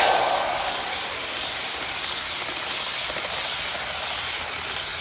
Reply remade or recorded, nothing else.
recorded